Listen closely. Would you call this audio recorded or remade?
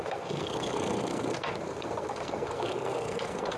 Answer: remade